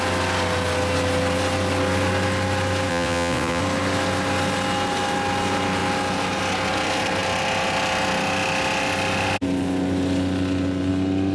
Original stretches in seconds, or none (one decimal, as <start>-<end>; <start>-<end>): 0.0-2.9; 3.6-11.3